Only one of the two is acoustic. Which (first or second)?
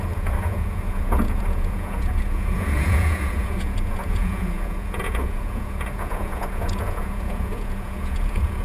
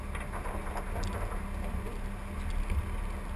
second